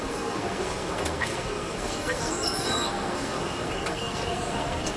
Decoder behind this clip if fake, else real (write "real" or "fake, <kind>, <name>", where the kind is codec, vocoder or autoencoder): fake, codec, SNAC